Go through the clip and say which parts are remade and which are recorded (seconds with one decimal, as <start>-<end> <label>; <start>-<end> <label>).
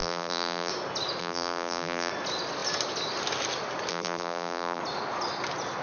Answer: 0.0-0.7 remade; 0.7-1.2 recorded; 1.2-2.1 remade; 2.1-3.9 recorded; 3.9-4.8 remade; 4.8-5.8 recorded